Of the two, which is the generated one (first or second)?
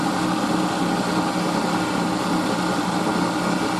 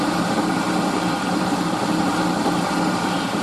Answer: second